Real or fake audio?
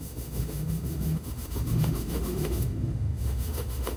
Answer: fake